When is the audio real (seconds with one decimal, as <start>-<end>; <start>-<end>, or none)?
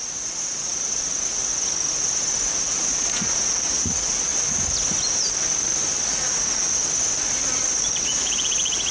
1.5-2.6; 4.3-6.1; 6.8-8.0